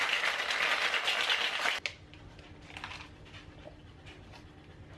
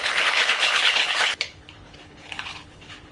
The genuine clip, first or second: first